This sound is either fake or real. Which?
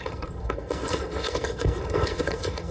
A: fake